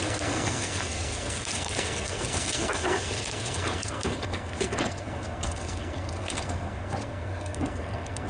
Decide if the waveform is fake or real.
fake